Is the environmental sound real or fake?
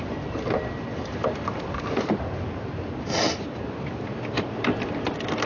real